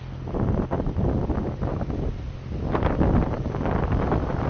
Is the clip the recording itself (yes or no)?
yes